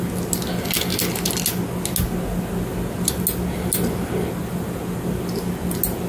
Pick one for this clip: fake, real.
real